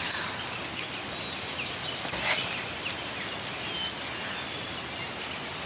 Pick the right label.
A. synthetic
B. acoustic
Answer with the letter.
B